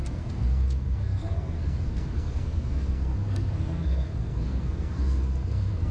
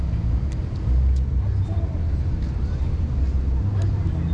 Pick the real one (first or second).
second